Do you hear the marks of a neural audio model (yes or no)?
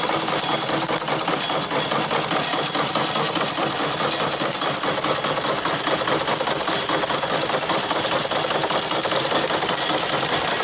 no